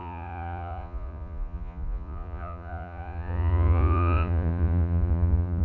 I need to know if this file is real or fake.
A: fake